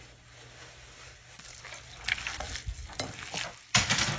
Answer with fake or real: real